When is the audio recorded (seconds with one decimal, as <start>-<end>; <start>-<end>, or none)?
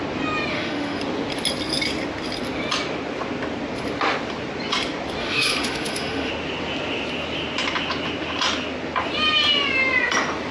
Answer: 0.0-0.5; 1.0-5.2; 6.3-10.5